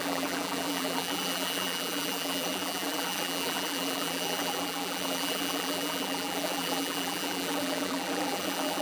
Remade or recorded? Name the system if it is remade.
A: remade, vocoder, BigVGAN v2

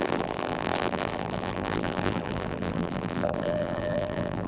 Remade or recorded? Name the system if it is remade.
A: remade, vocoder, BigVGAN v2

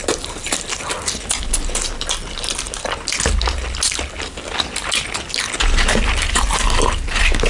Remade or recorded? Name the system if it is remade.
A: recorded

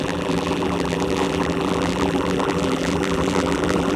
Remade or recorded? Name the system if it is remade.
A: remade, vocoder, BigVGAN v2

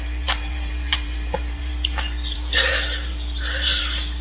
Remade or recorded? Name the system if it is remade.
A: remade, vocoder, BigVGAN v2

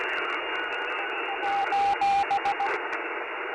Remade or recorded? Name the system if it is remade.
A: remade, vocoder, BigVGAN v2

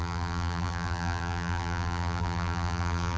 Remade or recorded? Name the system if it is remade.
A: remade, vocoder, BigVGAN v2